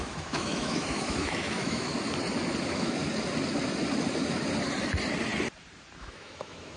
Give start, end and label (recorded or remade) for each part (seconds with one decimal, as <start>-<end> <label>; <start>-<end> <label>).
0.0-1.9 remade; 1.9-2.6 recorded; 2.6-3.0 remade; 3.0-6.0 recorded; 6.0-6.8 remade